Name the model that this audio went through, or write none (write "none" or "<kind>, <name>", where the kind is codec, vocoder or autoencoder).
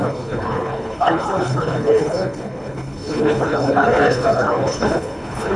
codec, HILCodec